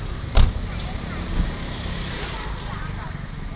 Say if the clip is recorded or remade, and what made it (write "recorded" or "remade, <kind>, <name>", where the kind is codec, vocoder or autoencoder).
remade, vocoder, BigVGAN v2